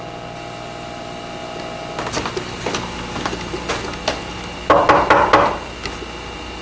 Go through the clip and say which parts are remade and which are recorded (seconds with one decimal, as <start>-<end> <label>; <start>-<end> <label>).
0.0-6.6 recorded